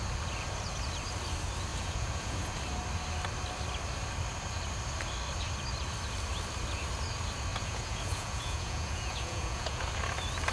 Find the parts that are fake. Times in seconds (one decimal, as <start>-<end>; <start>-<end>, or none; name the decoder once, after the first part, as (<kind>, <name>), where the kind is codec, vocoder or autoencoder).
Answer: 1.7-2.6 (vocoder, Vocos); 7.5-9.8